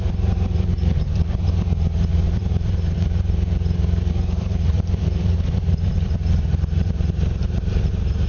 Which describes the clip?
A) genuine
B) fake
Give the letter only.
B